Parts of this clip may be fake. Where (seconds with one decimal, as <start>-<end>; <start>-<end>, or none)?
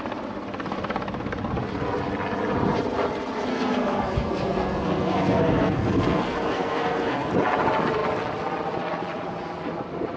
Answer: 3.5-7.3